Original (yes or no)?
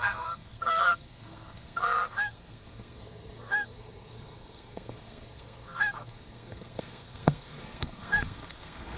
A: no